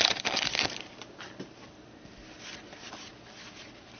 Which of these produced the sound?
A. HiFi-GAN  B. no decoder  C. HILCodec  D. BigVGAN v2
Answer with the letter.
B